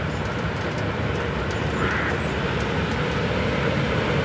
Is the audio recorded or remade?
recorded